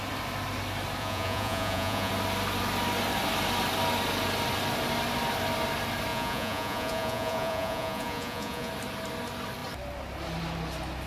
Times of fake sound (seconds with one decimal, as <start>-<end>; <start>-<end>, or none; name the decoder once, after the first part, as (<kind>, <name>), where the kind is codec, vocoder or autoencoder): 1.0-2.1 (vocoder, Vocos); 6.1-8.7